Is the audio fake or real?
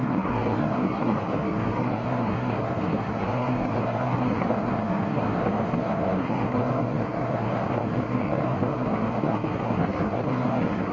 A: fake